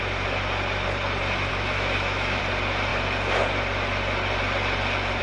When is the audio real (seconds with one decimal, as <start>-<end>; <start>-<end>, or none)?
0.0-1.5; 2.4-5.2